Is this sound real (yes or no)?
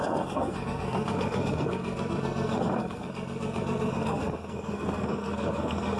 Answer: no